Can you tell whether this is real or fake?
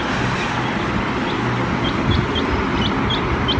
real